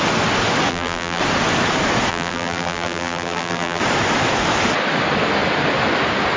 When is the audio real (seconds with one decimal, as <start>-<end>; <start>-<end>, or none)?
0.0-0.7; 1.2-2.1; 3.8-6.4